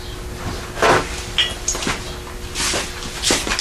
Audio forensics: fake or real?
real